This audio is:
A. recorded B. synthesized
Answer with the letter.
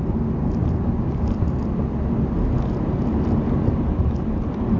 A